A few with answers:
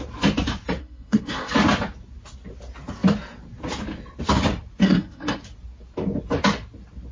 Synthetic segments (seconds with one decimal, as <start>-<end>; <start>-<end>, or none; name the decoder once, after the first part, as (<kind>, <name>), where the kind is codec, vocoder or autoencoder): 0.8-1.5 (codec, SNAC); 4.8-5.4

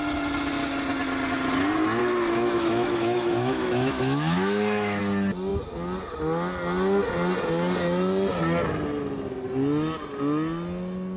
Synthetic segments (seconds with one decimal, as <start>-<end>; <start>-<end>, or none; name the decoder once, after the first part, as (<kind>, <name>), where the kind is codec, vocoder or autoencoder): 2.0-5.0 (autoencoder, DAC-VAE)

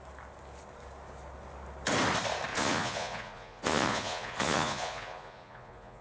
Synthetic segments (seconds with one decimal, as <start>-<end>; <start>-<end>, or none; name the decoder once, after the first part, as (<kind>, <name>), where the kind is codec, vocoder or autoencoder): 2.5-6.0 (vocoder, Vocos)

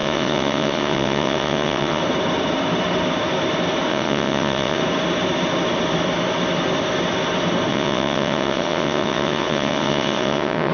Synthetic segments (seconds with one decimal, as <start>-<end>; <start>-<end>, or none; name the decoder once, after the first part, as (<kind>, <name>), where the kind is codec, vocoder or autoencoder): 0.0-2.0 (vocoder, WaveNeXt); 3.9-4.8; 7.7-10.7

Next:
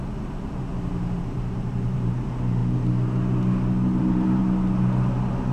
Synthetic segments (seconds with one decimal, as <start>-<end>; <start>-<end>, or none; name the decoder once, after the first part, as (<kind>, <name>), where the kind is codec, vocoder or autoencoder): 0.0-0.7 (vocoder, BigVGAN v2); 1.2-2.6; 4.0-4.4

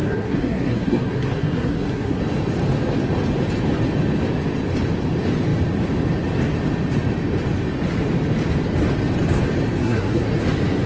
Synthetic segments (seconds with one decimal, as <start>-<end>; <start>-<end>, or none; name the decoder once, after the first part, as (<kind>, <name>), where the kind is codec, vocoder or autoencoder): 0.0-2.2 (codec, SNAC); 9.8-10.4

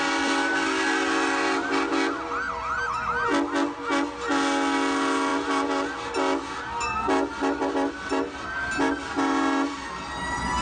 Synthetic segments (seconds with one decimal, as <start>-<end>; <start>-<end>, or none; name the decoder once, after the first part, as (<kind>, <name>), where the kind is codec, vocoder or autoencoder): none